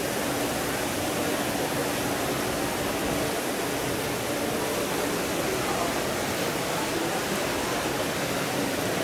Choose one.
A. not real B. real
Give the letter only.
B